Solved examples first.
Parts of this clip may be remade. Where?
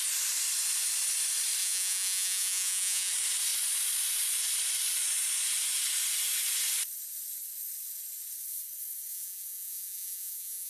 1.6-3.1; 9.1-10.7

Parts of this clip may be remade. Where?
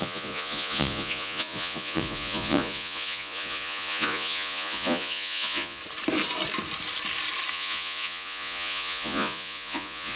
0.0-5.8; 7.5-10.2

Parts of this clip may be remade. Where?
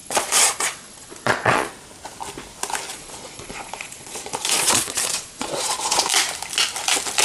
0.0-1.7; 2.9-6.0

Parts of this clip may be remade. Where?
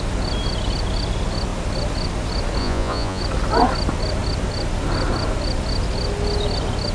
2.6-3.2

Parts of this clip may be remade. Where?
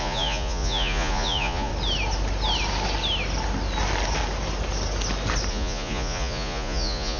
0.0-1.7; 5.5-7.2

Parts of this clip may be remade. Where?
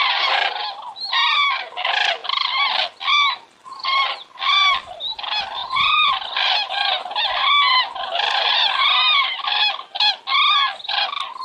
5.6-6.1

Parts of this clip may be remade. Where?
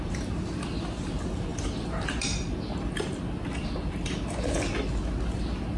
none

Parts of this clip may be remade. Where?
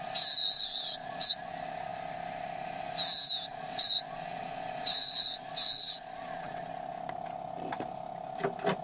0.4-1.3; 3.5-6.7